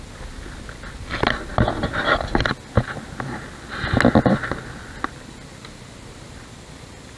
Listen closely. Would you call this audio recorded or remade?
recorded